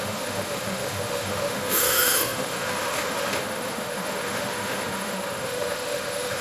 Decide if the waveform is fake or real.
fake